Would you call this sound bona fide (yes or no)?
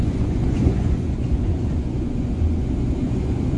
no